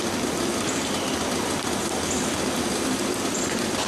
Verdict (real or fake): real